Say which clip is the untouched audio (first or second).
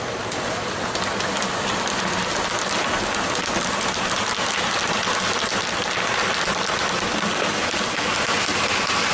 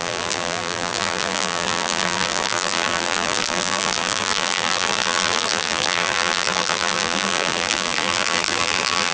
first